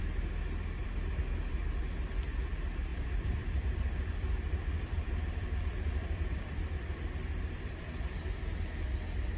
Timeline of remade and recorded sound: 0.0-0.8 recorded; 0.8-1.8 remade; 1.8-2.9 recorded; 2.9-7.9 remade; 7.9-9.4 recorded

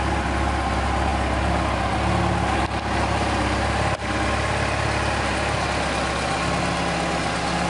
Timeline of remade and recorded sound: 0.0-7.7 recorded

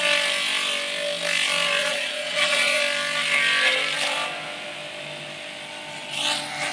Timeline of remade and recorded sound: 0.0-1.8 recorded; 1.8-2.8 remade; 2.8-6.7 recorded

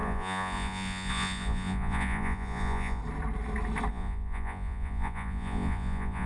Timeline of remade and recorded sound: 0.0-3.0 remade; 3.0-3.9 recorded; 3.9-6.3 remade

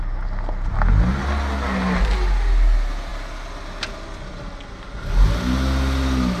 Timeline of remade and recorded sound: 0.0-6.4 recorded

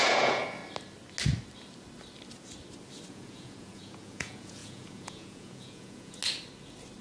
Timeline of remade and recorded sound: 0.0-0.6 remade; 0.6-3.1 recorded; 3.1-6.2 remade; 6.2-7.0 recorded

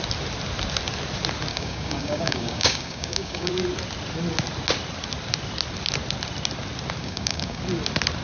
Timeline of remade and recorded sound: 0.0-1.5 recorded; 1.5-3.5 remade; 3.5-7.0 recorded; 7.0-7.6 remade; 7.6-8.2 recorded